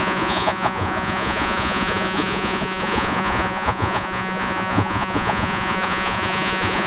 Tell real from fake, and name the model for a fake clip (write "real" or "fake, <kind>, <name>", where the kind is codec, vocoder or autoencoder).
fake, vocoder, Vocos